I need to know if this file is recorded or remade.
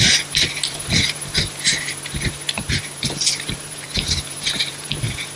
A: remade